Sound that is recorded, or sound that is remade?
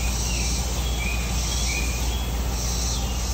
recorded